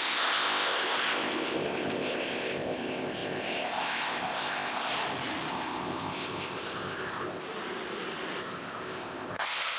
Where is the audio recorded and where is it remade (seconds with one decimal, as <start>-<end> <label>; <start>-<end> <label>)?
0.0-4.9 remade; 4.9-5.5 recorded; 5.5-7.4 remade; 7.4-8.4 recorded; 8.4-9.8 remade